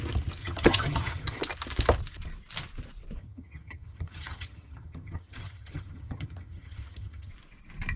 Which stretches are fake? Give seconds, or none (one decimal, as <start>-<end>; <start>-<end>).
0.4-1.4; 3.2-7.3